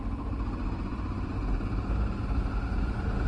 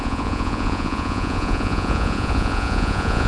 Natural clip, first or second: first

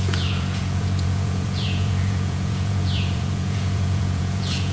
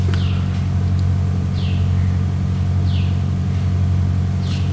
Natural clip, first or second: second